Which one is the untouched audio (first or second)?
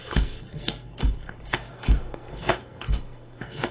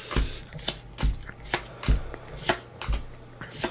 second